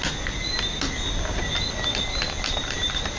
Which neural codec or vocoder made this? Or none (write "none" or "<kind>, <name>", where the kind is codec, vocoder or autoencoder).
none